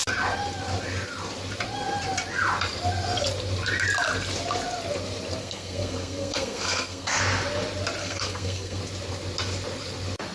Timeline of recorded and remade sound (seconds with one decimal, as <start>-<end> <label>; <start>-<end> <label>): 0.0-5.4 recorded; 5.4-7.2 remade; 7.2-8.0 recorded; 8.0-8.8 remade; 8.8-10.3 recorded

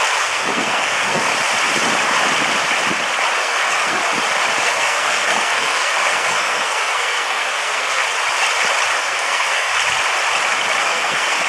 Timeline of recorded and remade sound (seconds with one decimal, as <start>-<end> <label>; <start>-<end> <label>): 0.0-1.3 remade; 1.3-3.4 recorded; 3.4-4.0 remade; 4.0-4.6 recorded; 4.6-8.0 remade; 8.0-9.0 recorded; 9.0-9.7 remade; 9.7-10.8 recorded; 10.8-11.5 remade

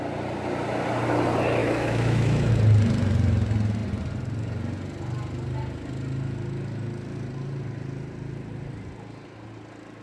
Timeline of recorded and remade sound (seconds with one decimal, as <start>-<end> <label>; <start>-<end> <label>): 0.0-1.6 recorded; 1.6-2.5 remade; 2.5-10.0 recorded

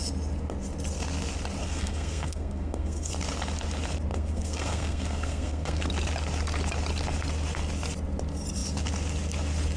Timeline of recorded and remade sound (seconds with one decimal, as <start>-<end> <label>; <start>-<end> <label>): 0.0-1.6 recorded; 1.6-3.1 remade; 3.1-4.1 recorded; 4.1-5.9 remade; 5.9-9.8 recorded

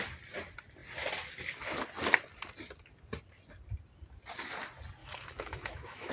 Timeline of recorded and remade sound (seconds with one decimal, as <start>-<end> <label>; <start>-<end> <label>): 0.0-5.0 recorded; 5.0-6.1 remade

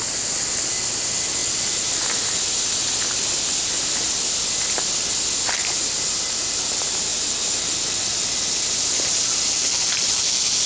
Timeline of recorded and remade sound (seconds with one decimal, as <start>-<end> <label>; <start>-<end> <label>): 0.0-10.7 recorded

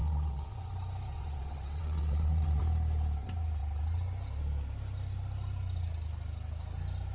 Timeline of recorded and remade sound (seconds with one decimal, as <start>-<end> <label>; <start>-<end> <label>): 0.0-0.7 remade; 0.7-1.1 recorded; 1.1-2.6 remade; 2.6-7.1 recorded